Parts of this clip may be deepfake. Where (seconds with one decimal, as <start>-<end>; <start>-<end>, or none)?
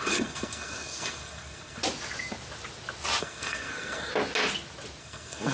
0.0-1.8; 3.2-4.1; 5.0-5.5